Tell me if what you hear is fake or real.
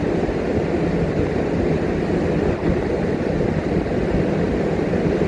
real